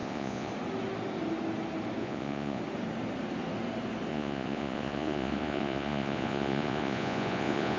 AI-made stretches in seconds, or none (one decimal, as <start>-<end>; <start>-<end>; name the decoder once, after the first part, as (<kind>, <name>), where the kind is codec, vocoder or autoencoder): 0.0-0.5 (vocoder, Vocos); 2.0-2.6; 4.1-7.8